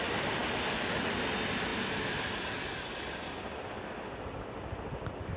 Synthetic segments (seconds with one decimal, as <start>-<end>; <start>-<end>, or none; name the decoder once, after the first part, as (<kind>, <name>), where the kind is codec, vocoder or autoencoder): none